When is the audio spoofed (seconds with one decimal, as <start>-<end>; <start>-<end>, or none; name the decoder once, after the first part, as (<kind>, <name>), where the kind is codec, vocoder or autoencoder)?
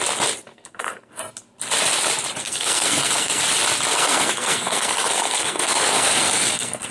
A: 0.5-1.2 (codec, SNAC); 2.4-3.4; 3.9-6.9